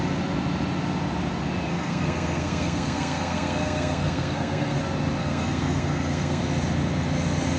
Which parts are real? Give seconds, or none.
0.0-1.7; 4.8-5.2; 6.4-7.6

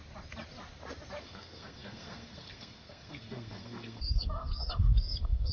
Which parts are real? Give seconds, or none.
0.0-1.2

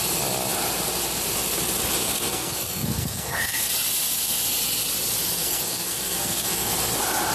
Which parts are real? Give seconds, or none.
0.0-2.0; 3.7-5.4; 6.7-7.3

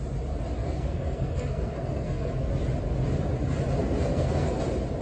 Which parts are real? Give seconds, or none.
0.0-0.6; 2.5-3.8; 4.6-5.0

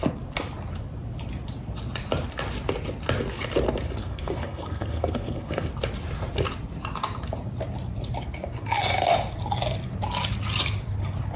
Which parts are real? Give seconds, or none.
0.0-4.0; 5.7-11.4

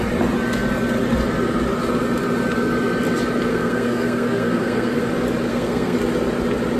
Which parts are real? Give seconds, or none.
0.0-3.5; 5.0-5.5; 6.0-6.8

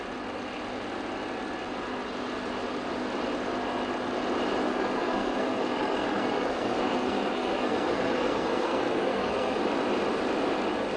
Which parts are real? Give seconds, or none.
0.0-4.7; 9.6-11.0

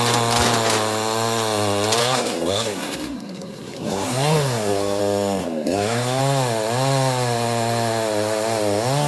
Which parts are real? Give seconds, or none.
0.0-2.0; 5.0-5.4; 6.2-9.1